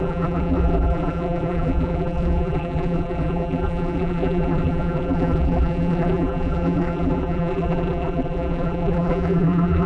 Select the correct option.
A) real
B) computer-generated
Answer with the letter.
B